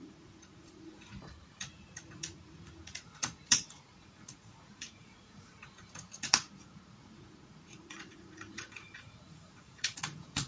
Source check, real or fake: fake